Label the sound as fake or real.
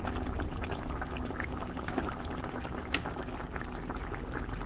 real